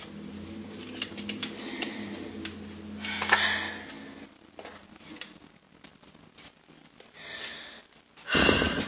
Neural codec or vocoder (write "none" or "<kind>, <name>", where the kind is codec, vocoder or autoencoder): none